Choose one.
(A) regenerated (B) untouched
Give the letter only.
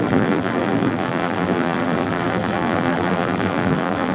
A